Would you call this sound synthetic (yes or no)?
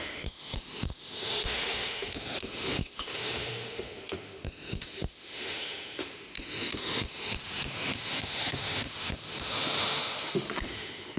yes